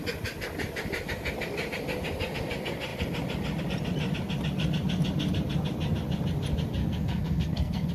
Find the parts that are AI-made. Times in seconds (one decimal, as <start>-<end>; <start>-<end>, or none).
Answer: 6.8-7.9